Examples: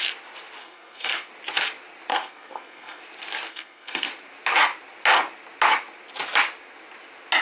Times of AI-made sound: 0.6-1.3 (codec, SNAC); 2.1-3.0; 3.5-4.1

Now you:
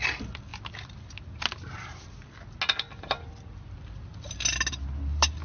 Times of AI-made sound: none

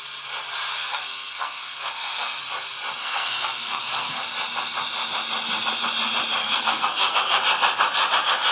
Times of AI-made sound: 0.7-2.4 (codec, SNAC); 3.0-4.2; 6.4-7.4

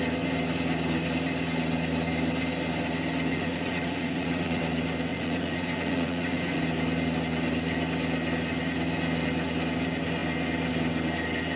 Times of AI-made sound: 3.3-4.6 (vocoder, Vocos); 5.1-6.6

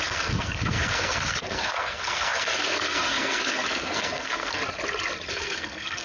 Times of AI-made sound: 0.0-4.6 (codec, SNAC); 5.3-6.0

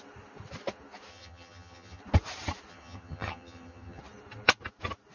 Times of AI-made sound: 1.1-2.0 (vocoder, HiFi-GAN); 2.7-4.0